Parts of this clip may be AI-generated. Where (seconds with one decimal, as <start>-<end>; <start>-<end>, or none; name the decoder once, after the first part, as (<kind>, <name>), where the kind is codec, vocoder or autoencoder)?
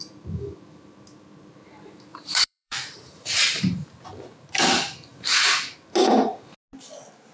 2.1-3.6 (vocoder, BigVGAN v2)